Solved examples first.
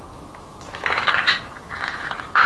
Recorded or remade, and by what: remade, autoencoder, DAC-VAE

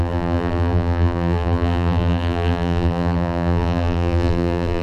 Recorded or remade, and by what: remade, vocoder, BigVGAN v2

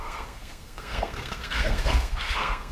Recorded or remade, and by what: remade, codec, SNAC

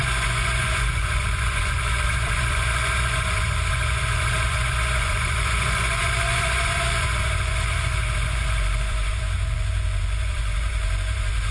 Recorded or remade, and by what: remade, vocoder, Vocos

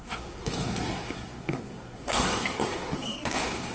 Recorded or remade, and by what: remade, codec, SNAC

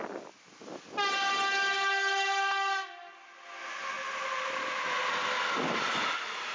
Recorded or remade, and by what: recorded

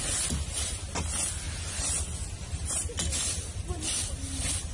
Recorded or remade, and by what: recorded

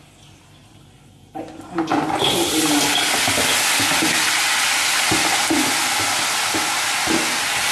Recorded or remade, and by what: recorded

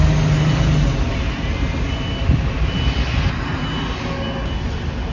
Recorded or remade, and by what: recorded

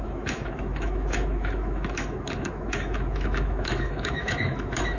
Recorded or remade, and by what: remade, autoencoder, DAC-VAE